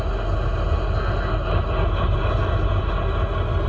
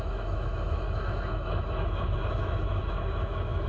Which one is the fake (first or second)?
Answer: second